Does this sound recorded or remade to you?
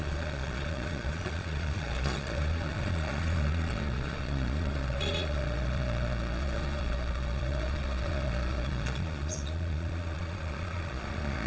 remade